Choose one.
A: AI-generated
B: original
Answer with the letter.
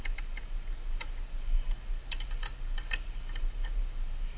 B